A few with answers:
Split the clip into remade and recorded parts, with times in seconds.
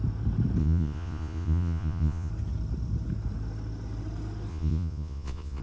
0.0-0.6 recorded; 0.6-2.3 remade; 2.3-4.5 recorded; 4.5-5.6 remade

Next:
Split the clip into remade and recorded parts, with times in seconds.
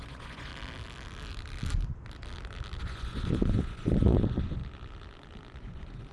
0.0-0.5 remade; 0.5-2.8 recorded; 2.8-4.6 remade; 4.6-5.6 recorded; 5.6-6.1 remade